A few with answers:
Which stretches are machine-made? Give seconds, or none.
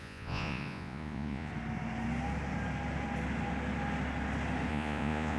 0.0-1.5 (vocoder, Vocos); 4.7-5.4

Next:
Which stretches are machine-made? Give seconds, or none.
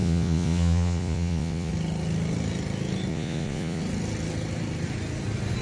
0.0-1.7 (vocoder, Vocos); 3.1-3.8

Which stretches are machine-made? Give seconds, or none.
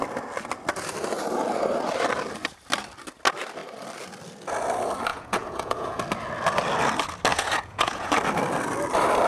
5.1-6.0 (vocoder, Vocos); 7.3-8.1